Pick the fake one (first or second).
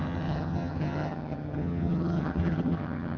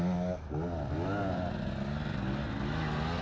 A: first